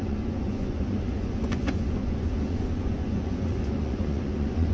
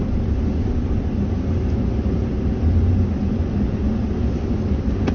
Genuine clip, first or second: second